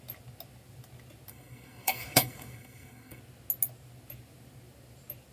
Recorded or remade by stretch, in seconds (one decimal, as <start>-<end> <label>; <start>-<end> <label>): 0.0-1.3 recorded; 1.3-3.2 remade; 3.2-5.3 recorded